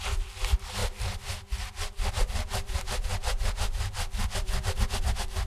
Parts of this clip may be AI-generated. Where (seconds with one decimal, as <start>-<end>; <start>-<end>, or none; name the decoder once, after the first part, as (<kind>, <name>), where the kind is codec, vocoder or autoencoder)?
none